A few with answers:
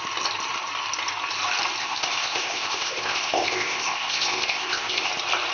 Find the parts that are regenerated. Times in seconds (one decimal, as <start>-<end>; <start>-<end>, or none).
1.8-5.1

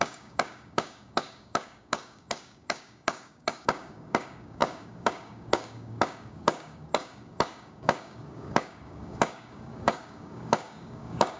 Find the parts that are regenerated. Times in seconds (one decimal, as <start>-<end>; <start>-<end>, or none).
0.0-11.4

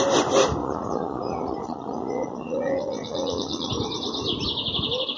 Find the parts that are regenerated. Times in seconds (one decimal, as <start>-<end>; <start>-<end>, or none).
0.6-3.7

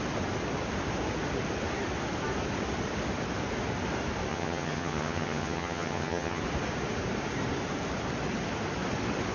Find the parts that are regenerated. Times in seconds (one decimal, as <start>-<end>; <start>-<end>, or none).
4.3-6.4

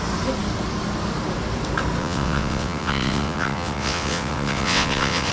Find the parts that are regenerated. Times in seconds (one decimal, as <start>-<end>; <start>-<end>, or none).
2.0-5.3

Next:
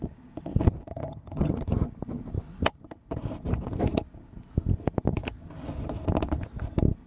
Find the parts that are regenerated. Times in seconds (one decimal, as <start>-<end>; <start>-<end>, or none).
0.9-1.5

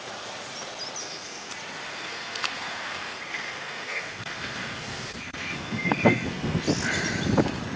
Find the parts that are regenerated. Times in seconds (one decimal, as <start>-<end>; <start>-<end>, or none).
1.0-1.5; 1.9-6.6